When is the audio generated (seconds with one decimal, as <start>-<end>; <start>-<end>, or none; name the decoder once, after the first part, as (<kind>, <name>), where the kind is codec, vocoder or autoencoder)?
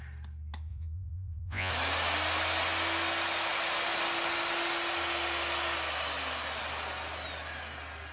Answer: 0.7-1.7 (vocoder, Vocos)